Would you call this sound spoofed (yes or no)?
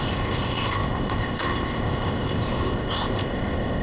yes